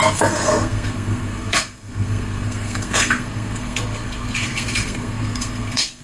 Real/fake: fake